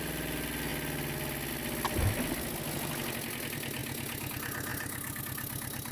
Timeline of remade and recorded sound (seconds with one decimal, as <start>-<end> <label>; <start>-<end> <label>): 0.0-5.9 recorded